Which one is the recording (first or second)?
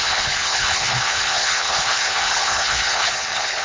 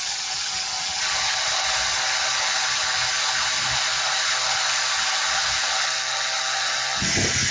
second